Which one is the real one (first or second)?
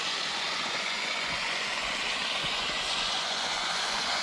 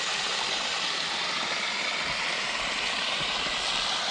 second